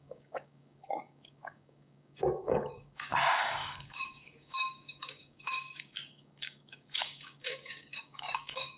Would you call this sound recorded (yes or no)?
no